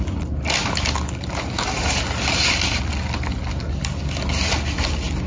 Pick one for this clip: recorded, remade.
recorded